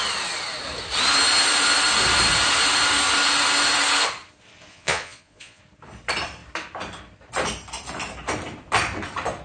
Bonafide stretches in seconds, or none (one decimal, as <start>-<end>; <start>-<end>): 0.0-4.7; 5.6-9.4